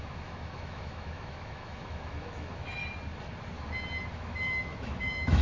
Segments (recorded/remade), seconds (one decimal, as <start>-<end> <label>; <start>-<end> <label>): 0.0-2.8 remade; 2.8-4.1 recorded; 4.1-5.4 remade